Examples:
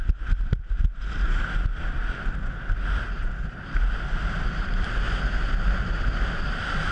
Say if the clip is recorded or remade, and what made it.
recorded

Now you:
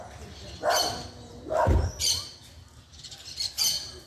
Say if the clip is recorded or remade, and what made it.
recorded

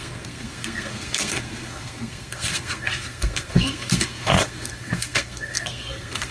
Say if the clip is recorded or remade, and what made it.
remade, codec, SNAC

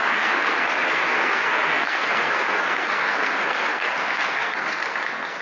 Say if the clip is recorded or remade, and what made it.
remade, codec, SNAC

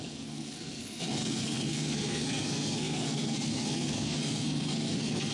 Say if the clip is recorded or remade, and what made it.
remade, codec, SNAC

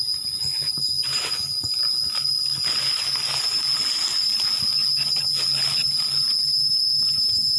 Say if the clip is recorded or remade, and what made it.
recorded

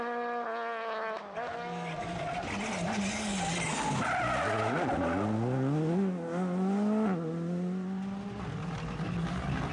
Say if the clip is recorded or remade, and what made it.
recorded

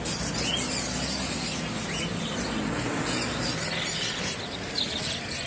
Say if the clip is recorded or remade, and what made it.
recorded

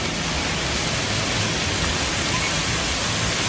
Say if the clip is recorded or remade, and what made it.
recorded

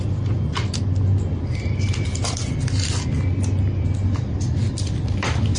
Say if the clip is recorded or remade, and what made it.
recorded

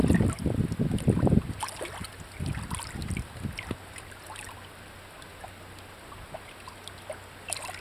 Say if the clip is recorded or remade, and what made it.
recorded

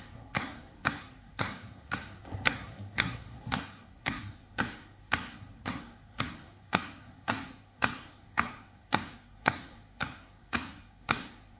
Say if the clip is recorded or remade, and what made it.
remade, codec, SNAC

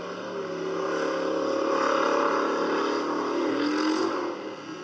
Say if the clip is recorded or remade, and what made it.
recorded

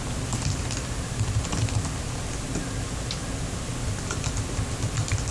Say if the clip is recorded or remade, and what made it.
recorded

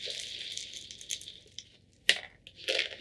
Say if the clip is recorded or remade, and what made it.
recorded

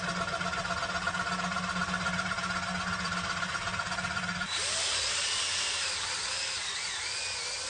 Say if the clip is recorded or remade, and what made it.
recorded